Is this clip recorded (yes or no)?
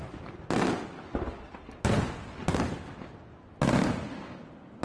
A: yes